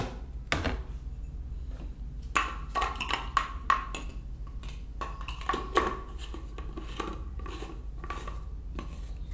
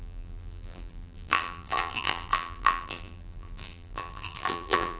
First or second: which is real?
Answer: first